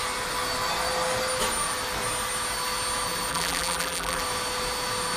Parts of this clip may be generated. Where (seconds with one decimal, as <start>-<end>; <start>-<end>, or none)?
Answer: 3.3-4.2